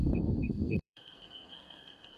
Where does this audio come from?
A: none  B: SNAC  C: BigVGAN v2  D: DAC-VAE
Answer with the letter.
B